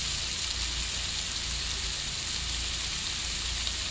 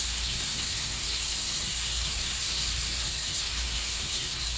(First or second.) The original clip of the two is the first